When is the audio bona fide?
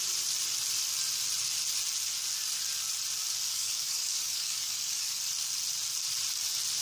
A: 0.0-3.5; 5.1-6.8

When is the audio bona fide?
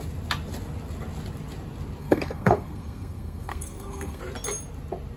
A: 0.0-2.0; 4.2-5.2